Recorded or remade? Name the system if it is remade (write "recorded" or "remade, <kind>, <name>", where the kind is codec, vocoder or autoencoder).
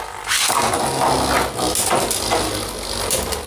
recorded